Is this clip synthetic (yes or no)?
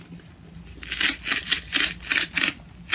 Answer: no